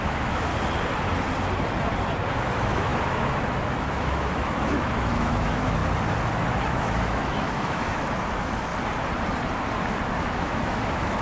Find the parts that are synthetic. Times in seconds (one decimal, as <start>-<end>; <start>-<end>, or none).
0.0-0.5; 2.3-5.8; 6.7-8.7; 10.2-11.2